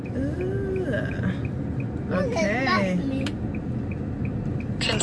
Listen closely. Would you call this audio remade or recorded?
recorded